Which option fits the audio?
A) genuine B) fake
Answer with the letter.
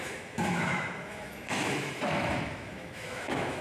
B